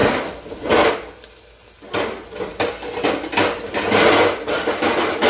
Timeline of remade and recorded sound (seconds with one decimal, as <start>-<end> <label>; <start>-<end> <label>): 0.0-5.3 recorded